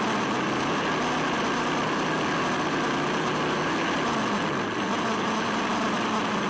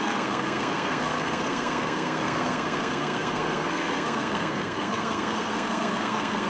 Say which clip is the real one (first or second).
first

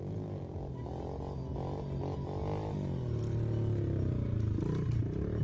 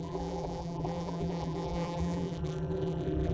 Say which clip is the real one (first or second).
first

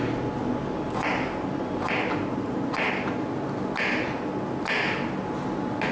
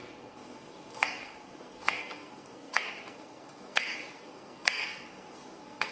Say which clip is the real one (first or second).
first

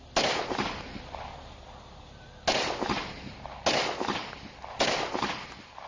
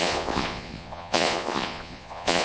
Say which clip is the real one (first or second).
first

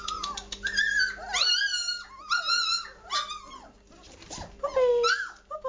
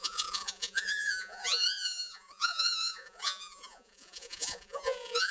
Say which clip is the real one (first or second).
first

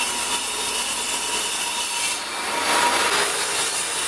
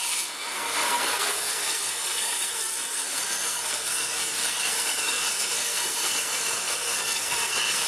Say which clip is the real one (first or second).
first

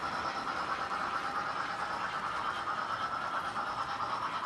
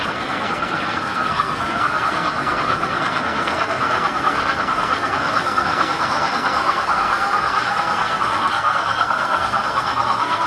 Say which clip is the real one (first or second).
first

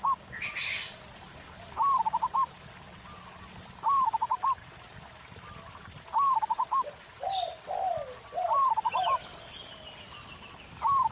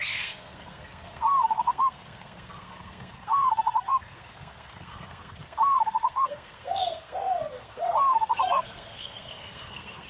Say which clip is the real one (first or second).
first